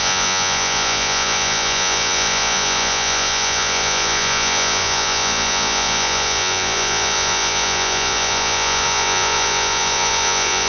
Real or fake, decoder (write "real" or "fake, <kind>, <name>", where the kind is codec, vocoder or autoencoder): fake, vocoder, Vocos